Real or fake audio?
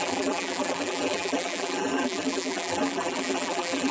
fake